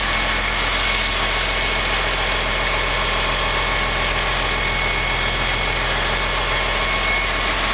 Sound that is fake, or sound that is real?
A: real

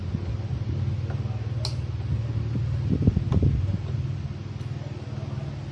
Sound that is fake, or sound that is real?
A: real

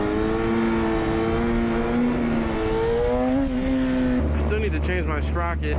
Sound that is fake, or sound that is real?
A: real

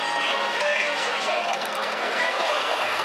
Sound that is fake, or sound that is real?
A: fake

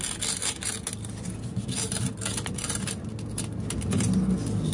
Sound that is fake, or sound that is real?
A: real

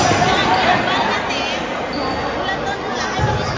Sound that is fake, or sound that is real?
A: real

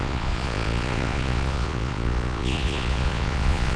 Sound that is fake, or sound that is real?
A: fake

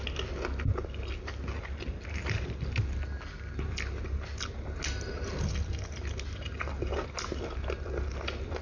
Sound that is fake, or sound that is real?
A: real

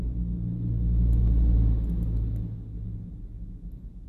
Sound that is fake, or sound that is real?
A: real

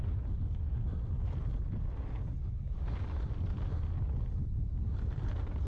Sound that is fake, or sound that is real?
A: real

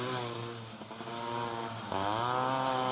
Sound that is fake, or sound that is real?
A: real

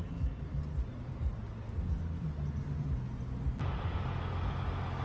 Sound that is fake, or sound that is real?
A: real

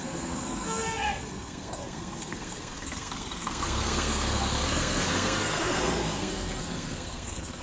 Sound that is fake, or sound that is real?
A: fake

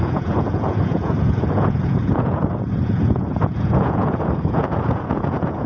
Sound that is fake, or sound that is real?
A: fake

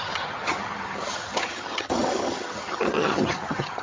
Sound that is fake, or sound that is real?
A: fake